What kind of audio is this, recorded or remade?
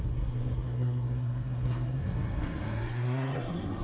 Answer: remade